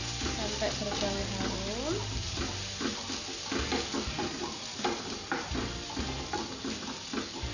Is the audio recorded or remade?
recorded